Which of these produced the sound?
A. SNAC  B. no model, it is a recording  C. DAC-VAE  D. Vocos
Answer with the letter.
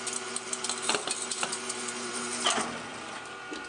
B